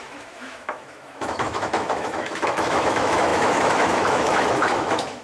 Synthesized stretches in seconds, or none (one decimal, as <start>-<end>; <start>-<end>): 0.0-5.2